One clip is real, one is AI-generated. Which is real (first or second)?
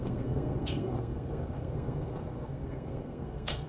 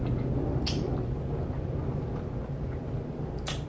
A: second